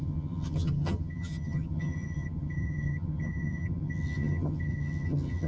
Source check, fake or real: fake